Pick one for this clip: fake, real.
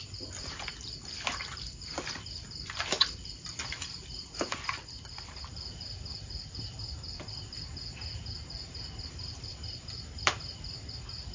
fake